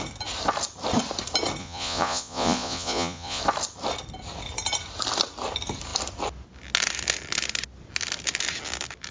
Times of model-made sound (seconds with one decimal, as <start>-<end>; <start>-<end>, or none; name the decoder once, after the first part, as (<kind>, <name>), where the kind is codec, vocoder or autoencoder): 1.6-3.4 (vocoder, Vocos)